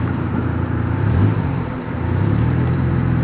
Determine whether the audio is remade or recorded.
remade